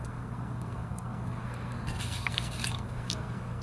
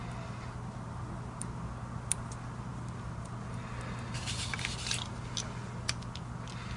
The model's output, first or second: first